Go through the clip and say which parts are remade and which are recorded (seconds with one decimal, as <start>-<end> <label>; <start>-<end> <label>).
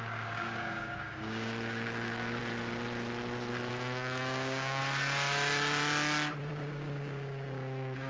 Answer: 0.0-2.4 remade; 2.4-3.7 recorded; 3.7-4.8 remade; 4.8-6.5 recorded; 6.5-8.1 remade